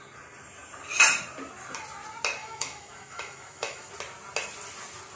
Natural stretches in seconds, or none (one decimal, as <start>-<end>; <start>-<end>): 0.0-2.4; 3.9-5.2

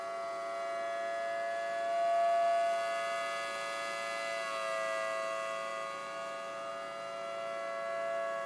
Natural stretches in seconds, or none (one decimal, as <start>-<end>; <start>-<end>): 0.0-8.5

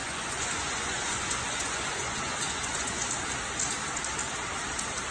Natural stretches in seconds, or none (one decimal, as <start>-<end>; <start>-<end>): 3.1-5.1

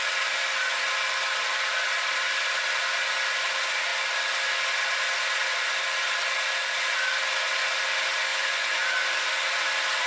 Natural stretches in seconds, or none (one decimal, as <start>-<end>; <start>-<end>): 0.0-8.3; 9.1-10.1

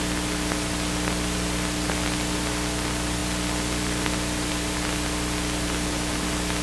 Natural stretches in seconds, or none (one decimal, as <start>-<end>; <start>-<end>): 0.0-6.6

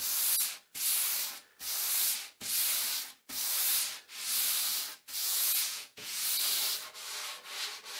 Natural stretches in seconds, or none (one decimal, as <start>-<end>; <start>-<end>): 0.0-5.2; 6.3-8.0